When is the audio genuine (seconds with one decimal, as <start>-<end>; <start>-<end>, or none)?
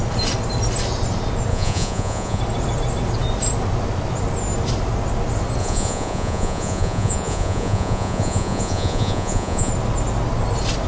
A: 0.0-1.5; 2.4-5.6; 9.7-10.9